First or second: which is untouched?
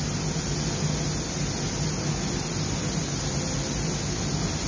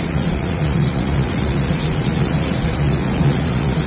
first